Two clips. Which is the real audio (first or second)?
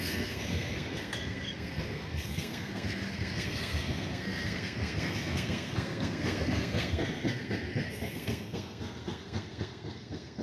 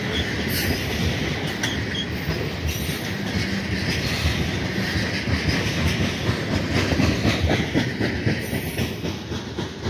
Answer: second